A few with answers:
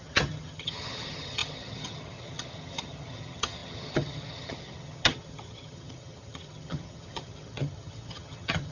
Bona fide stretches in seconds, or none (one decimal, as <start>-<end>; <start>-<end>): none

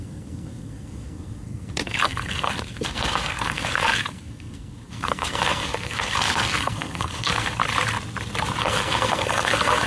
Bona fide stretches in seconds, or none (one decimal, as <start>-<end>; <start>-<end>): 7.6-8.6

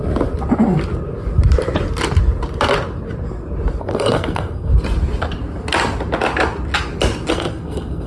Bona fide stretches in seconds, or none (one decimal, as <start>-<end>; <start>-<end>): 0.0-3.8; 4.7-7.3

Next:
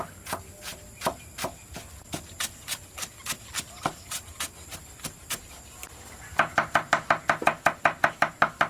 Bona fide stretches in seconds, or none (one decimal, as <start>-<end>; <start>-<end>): 0.0-8.7